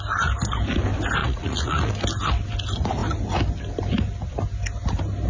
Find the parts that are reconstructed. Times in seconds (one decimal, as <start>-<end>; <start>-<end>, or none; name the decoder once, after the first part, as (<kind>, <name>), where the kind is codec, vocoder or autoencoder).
1.2-1.9 (vocoder, Vocos)